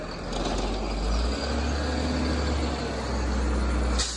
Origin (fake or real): real